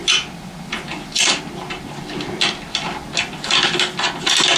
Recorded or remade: recorded